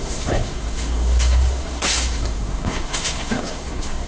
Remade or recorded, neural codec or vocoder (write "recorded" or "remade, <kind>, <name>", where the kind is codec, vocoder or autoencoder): remade, codec, SNAC